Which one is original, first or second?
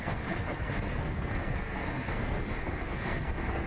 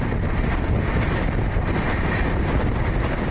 second